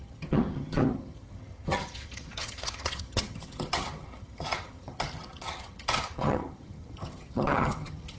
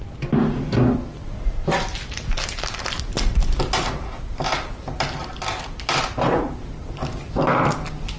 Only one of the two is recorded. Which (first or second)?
second